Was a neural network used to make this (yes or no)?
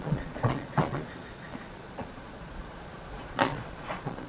yes